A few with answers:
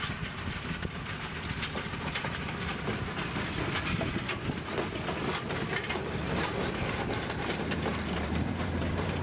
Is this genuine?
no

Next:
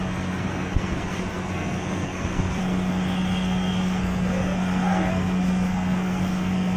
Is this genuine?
no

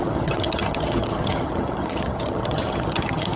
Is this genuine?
no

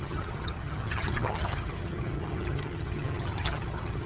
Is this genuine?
no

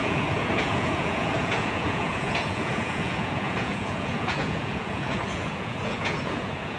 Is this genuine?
no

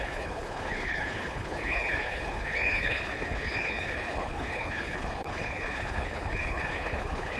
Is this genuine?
no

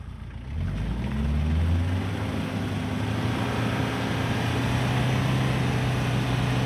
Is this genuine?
yes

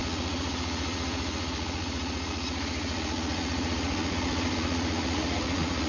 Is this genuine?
no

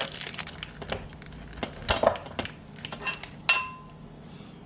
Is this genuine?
yes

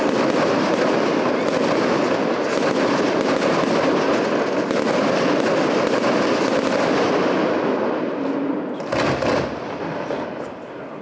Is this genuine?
yes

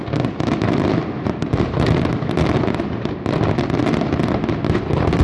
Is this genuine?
yes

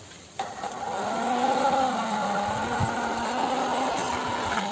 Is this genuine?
no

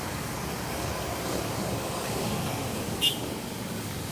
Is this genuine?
no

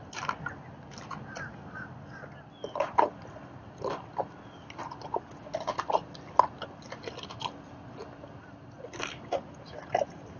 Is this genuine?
yes